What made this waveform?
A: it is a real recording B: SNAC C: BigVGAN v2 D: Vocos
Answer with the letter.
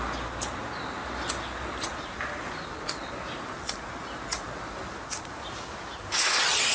A